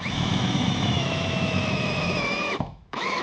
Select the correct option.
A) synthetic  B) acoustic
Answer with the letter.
A